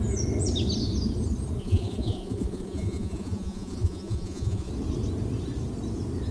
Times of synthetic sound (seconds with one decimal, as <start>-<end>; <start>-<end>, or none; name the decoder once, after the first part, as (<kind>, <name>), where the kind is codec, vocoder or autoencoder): 1.6-4.7 (vocoder, Vocos)